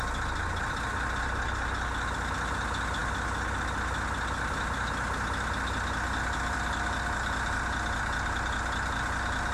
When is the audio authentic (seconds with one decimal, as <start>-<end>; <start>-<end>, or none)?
0.0-9.5